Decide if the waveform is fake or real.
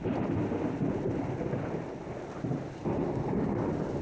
real